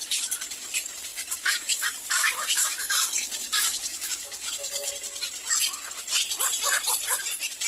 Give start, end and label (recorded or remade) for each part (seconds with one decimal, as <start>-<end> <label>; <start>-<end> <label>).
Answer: 0.0-1.1 recorded; 1.1-4.9 remade; 4.9-7.7 recorded